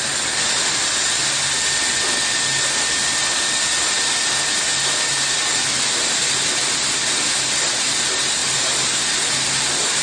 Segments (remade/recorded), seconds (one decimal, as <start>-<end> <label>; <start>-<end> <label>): 0.0-10.0 recorded